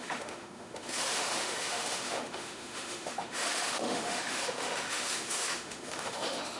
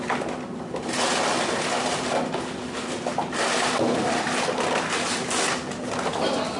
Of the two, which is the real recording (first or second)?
second